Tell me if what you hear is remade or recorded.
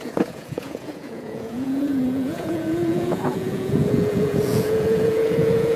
remade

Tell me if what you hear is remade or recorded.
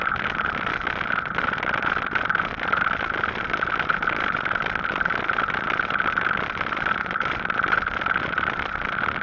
recorded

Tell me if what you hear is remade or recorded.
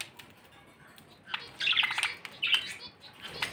recorded